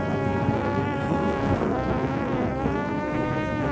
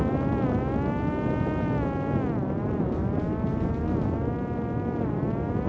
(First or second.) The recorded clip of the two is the second